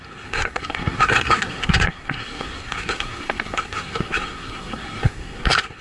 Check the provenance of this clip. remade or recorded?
remade